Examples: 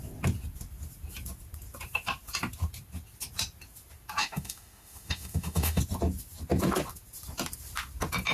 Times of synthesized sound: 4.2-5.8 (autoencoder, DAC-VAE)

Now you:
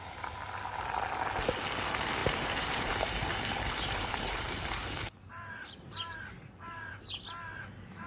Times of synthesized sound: 2.2-6.9 (vocoder, BigVGAN v2)

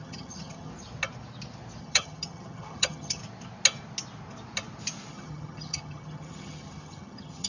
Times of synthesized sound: 0.0-0.7 (vocoder, HiFi-GAN); 1.8-3.2; 5.1-7.5

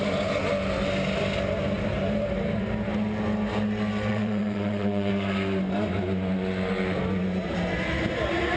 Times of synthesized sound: 4.1-5.1 (vocoder, WaveNeXt)

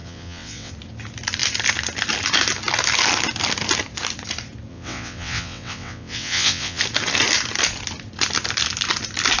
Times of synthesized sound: 0.0-0.7 (vocoder, WaveNeXt); 4.7-6.8